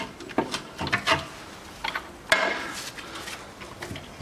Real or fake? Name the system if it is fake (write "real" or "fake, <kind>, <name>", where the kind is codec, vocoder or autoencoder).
real